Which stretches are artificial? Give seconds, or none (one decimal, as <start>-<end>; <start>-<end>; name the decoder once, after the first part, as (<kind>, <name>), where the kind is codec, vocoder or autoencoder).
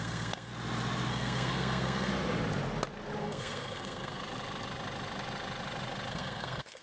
0.0-0.5 (codec, SNAC); 1.1-2.1; 3.2-4.2; 6.1-6.8